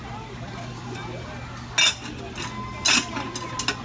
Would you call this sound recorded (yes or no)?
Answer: yes